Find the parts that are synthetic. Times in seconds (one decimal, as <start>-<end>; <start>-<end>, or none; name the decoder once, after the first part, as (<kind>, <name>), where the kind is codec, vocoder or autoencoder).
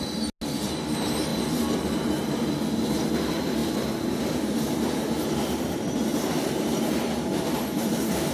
6.1-7.0 (vocoder, BigVGAN v2)